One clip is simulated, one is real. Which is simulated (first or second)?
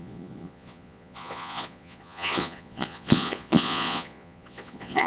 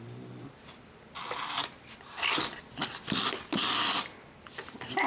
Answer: first